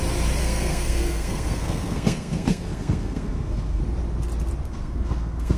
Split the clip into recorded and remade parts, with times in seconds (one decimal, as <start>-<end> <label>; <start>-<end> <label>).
0.0-0.4 recorded; 0.4-3.8 remade; 3.8-4.6 recorded; 4.6-5.6 remade